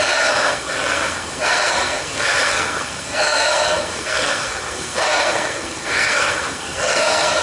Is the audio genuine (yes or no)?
no